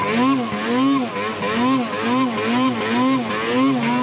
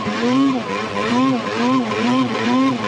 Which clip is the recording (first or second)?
first